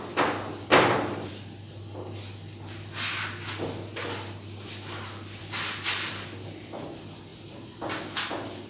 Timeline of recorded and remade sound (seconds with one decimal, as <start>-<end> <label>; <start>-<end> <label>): 0.0-0.7 recorded; 0.7-1.3 remade; 1.3-5.4 recorded; 5.4-6.1 remade; 6.1-8.7 recorded